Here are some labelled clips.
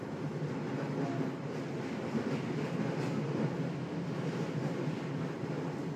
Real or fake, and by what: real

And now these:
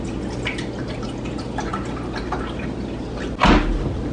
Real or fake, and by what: real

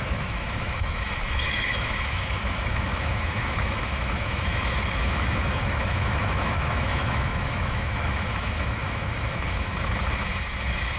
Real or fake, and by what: fake, autoencoder, DAC-VAE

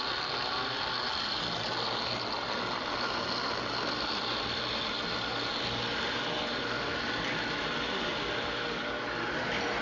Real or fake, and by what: real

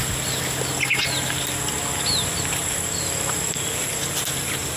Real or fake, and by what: real